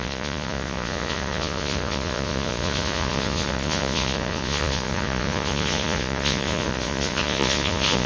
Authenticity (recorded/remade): remade